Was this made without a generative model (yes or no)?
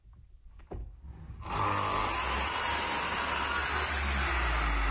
yes